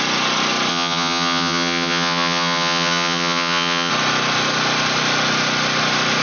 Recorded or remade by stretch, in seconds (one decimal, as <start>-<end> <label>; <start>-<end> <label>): 0.0-0.7 recorded; 0.7-3.9 remade; 3.9-6.2 recorded